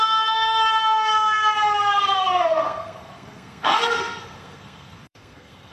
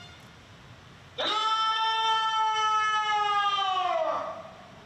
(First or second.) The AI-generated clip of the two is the first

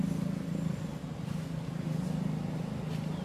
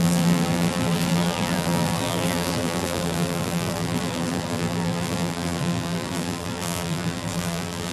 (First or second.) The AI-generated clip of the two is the second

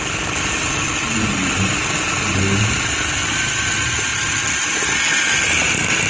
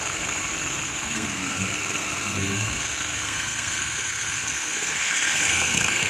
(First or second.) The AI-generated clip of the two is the second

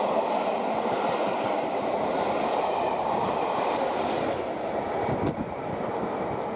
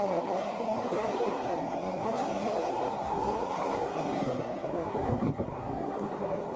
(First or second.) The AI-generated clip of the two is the second